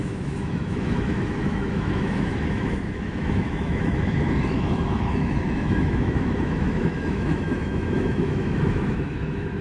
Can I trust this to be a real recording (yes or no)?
no